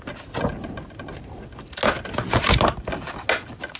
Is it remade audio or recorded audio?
recorded